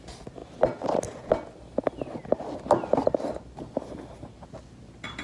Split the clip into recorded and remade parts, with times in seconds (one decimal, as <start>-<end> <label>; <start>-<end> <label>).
0.0-5.2 recorded